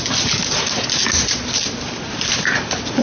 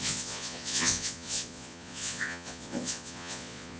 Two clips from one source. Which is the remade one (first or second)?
second